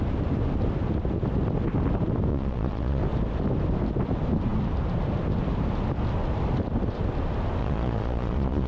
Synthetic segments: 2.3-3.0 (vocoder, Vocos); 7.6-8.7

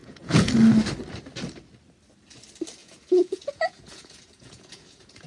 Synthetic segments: 0.0-0.5 (vocoder, Vocos); 2.8-5.3

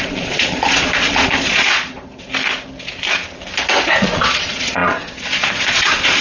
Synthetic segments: 0.0-2.1 (vocoder, Vocos); 3.9-6.2

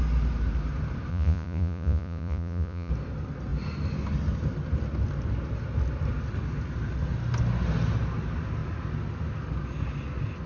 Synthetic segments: 1.1-2.9 (vocoder, Vocos)

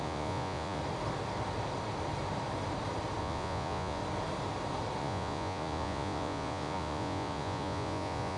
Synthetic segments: 0.0-0.8 (vocoder, Vocos); 3.2-4.0; 5.0-8.4

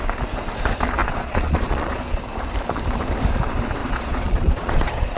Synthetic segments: 1.0-2.2 (vocoder, Vocos); 3.8-5.2

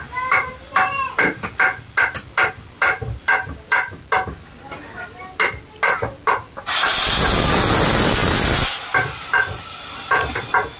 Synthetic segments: none